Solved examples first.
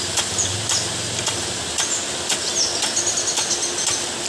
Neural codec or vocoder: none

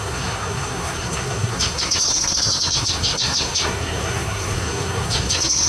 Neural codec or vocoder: codec, SNAC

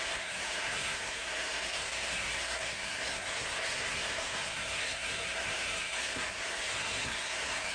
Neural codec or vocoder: codec, SNAC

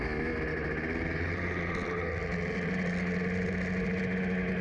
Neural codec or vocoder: none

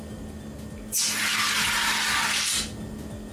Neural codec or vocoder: none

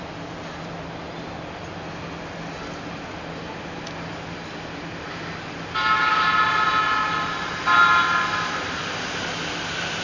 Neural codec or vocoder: none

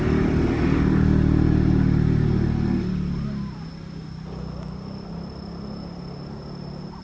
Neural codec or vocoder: none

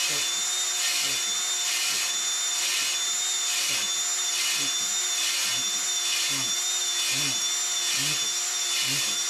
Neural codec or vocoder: none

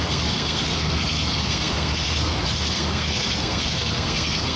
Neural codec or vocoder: codec, SNAC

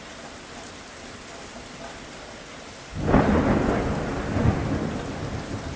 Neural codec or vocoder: none